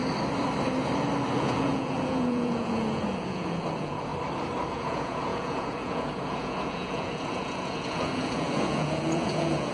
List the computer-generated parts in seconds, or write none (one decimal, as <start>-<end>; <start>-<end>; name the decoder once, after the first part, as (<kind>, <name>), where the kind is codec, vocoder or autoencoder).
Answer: 1.3-4.1 (vocoder, Vocos); 4.7-9.7